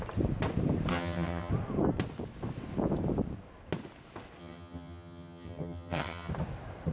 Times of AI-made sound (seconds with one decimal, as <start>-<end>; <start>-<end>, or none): 0.9-1.5; 4.4-6.3